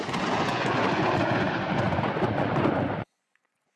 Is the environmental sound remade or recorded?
remade